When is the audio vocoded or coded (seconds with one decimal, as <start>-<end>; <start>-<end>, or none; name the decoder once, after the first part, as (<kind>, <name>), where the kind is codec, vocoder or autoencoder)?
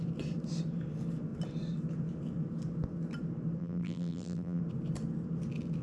3.6-4.6 (vocoder, BigVGAN v2)